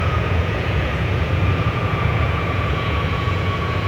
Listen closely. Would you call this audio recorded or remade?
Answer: remade